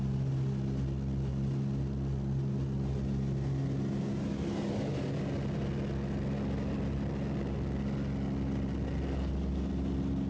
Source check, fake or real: real